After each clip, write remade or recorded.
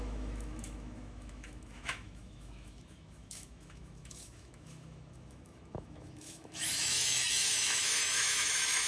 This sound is remade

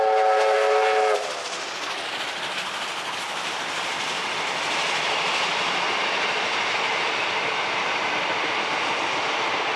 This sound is recorded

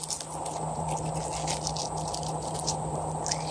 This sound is recorded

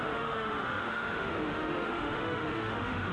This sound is remade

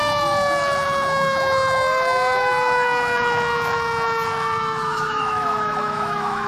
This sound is remade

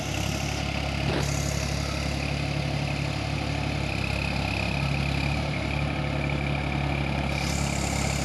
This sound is recorded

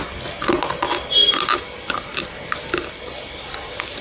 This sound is recorded